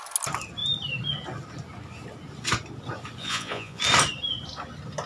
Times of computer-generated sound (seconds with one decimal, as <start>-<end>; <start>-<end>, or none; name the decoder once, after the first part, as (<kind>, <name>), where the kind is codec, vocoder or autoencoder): 3.2-3.8 (vocoder, Vocos)